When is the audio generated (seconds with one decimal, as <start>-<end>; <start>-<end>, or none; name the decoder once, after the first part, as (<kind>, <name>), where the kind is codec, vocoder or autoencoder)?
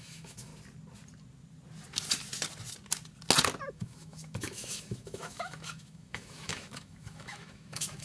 0.0-0.5 (autoencoder, DAC-VAE); 3.7-8.0